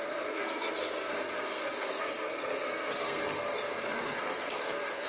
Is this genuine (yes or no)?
no